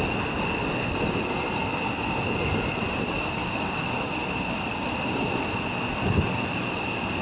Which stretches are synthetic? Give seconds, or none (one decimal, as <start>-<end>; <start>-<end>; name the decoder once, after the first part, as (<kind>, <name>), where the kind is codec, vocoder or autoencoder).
none